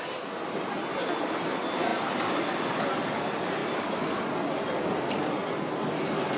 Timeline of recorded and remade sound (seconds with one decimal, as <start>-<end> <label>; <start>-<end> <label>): 0.0-6.4 recorded